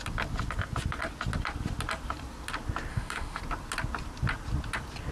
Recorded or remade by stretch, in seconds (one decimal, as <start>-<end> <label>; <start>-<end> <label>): 0.0-2.9 recorded; 2.9-3.4 remade; 3.4-5.1 recorded